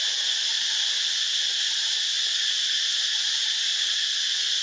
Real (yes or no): yes